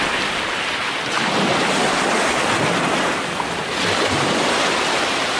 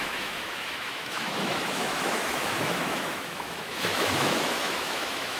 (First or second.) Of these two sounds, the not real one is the second